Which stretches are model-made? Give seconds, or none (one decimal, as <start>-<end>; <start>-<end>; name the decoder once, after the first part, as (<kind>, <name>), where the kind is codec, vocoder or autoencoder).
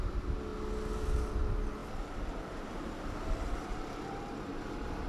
1.8-5.1 (vocoder, BigVGAN v2)